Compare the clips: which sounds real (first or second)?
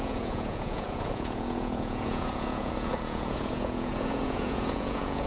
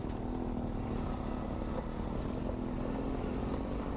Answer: second